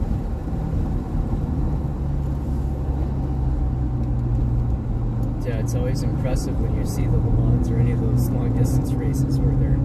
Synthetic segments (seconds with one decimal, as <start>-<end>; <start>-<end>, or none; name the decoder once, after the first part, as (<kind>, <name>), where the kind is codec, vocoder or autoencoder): 0.4-1.6 (vocoder, BigVGAN v2); 6.1-7.4; 8.4-9.2